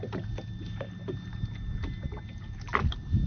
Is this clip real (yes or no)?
yes